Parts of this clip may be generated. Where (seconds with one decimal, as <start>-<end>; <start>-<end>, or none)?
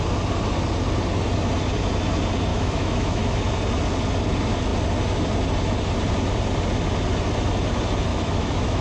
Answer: 2.5-3.4; 8.1-8.8